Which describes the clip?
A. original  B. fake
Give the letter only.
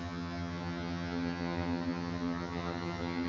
B